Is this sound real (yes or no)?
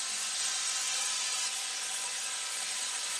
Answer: no